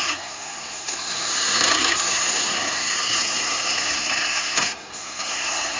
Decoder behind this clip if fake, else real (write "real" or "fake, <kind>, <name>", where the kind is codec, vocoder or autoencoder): fake, codec, SNAC